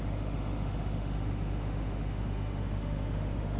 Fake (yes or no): yes